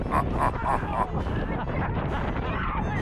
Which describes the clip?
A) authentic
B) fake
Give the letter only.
A